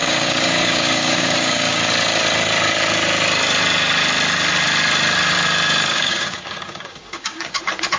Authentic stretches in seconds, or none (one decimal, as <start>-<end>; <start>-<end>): 1.8-5.9; 7.6-8.0

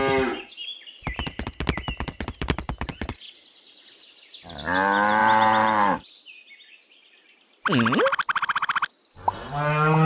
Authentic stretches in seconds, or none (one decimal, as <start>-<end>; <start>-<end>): 0.0-5.2; 6.1-10.1

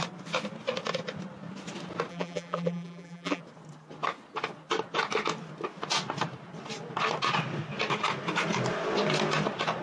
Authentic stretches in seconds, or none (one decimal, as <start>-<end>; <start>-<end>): 0.0-2.1; 3.4-9.8